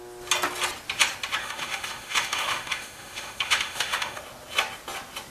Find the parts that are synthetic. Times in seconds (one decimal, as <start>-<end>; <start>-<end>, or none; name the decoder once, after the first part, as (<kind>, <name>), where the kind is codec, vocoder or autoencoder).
1.4-4.2 (autoencoder, DAC-VAE)